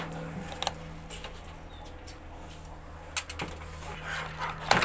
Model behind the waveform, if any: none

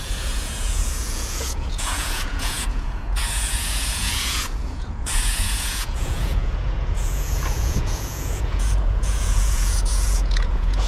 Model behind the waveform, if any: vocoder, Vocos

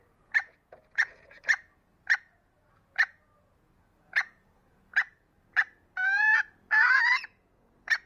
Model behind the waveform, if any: vocoder, Vocos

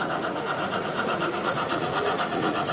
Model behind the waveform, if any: vocoder, Vocos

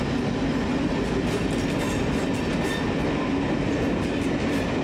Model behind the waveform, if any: none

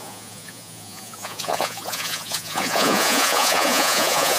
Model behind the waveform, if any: vocoder, Vocos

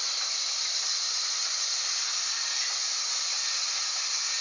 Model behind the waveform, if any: none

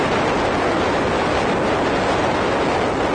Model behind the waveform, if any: none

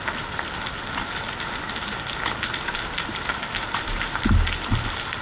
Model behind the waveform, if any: none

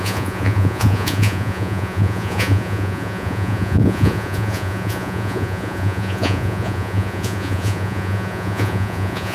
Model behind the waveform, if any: vocoder, Vocos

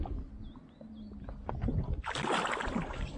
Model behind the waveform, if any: none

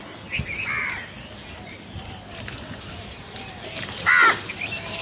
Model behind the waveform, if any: none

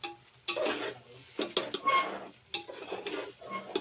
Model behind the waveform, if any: none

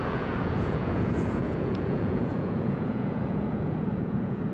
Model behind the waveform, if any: vocoder, Vocos